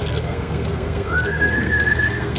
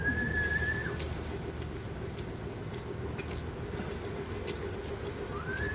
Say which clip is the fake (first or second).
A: first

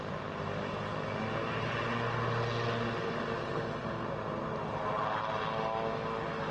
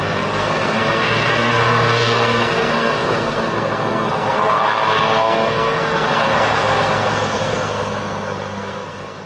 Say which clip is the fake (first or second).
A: second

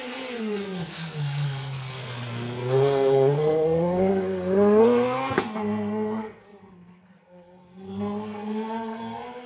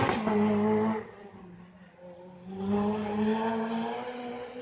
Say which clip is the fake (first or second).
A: first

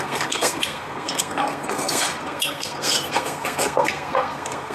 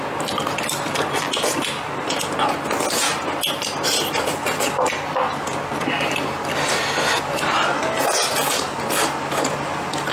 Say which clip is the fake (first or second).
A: first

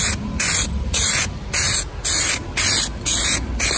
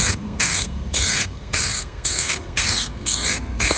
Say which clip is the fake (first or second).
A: second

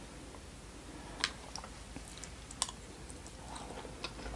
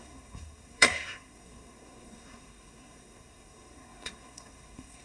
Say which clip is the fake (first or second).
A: second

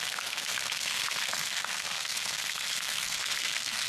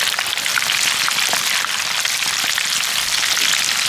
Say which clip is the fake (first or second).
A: first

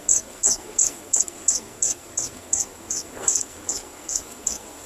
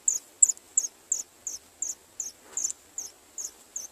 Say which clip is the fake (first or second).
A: first